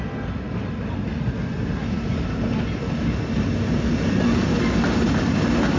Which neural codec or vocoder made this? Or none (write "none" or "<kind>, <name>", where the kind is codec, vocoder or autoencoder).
none